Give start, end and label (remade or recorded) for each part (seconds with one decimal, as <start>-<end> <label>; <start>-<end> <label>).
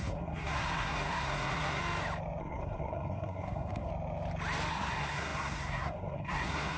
0.0-1.8 remade; 1.8-2.4 recorded; 2.4-3.9 remade; 3.9-4.7 recorded; 4.7-6.8 remade